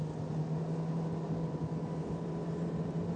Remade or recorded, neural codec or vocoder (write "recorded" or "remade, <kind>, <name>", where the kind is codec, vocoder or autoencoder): recorded